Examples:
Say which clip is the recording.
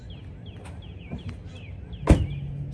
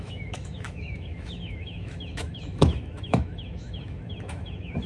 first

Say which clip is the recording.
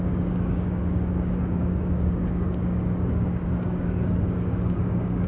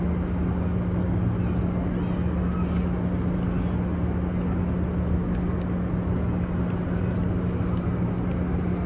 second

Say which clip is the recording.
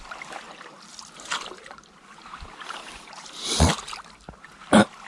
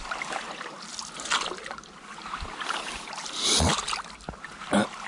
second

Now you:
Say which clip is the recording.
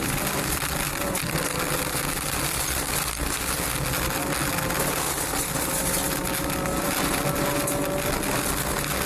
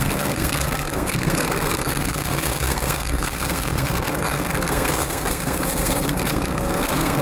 first